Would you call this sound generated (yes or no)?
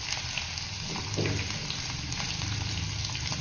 no